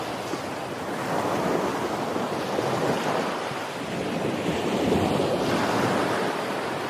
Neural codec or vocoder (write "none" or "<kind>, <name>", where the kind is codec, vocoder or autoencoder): none